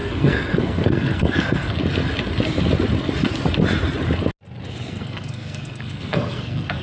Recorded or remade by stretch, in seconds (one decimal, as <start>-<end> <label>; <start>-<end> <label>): 0.0-1.8 remade; 1.8-4.7 recorded; 4.7-6.8 remade